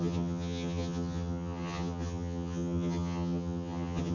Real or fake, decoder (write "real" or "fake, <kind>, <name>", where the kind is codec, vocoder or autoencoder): fake, vocoder, HiFi-GAN